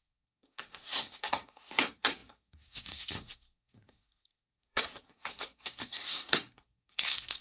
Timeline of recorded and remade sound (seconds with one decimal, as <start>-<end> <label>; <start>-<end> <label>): 0.0-7.4 remade